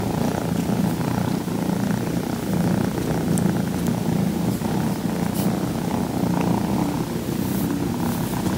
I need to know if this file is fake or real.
real